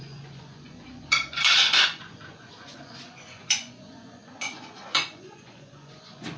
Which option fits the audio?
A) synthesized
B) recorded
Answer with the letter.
A